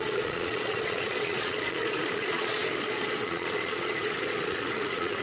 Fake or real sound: fake